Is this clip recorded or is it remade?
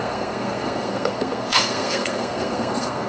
remade